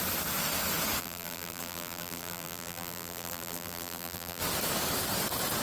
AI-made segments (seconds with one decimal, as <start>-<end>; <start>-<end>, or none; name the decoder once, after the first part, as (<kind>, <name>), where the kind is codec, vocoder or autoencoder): 1.0-4.4 (vocoder, BigVGAN v2)